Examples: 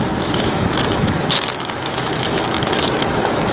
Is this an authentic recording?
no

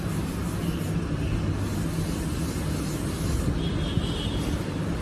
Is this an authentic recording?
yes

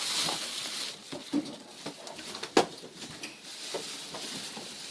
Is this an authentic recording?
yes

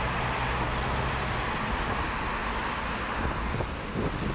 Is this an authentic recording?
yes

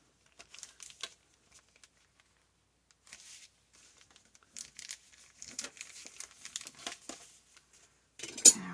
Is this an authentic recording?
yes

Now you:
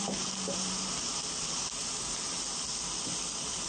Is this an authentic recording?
yes